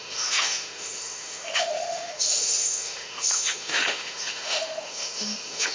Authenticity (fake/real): fake